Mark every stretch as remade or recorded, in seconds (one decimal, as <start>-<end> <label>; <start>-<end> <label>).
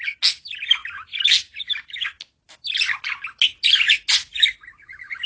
0.0-5.3 recorded